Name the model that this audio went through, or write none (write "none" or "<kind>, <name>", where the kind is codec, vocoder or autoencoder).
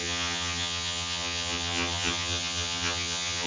vocoder, HiFi-GAN